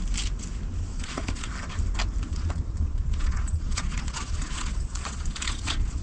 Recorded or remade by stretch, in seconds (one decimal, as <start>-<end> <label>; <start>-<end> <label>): 0.0-0.9 recorded; 0.9-1.5 remade; 1.5-2.3 recorded; 2.3-6.0 remade

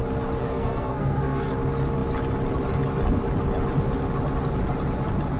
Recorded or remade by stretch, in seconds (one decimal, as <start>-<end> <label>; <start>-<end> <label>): 0.0-0.4 recorded; 0.4-1.5 remade; 1.5-5.4 recorded

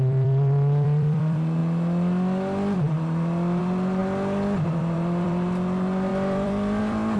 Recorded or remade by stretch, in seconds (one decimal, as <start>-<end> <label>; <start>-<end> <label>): 0.0-1.6 remade; 1.6-3.6 recorded; 3.6-4.0 remade; 4.0-4.8 recorded; 4.8-7.2 remade

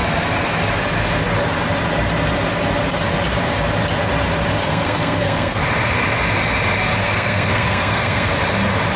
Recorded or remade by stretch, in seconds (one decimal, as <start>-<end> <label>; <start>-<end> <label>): 0.0-4.6 recorded; 4.6-5.6 remade; 5.6-7.0 recorded; 7.0-8.3 remade; 8.3-9.0 recorded

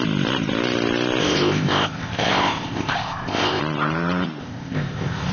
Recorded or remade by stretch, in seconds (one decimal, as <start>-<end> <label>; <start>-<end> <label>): 0.0-1.2 recorded; 1.2-3.6 remade; 3.6-4.4 recorded; 4.4-5.3 remade

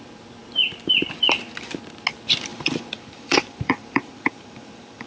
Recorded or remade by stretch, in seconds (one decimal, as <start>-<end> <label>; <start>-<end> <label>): 0.0-2.5 recorded; 2.5-5.1 remade

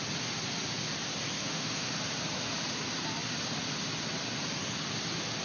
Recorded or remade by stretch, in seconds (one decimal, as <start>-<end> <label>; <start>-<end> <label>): 0.0-1.4 recorded; 1.4-1.9 remade; 1.9-5.4 recorded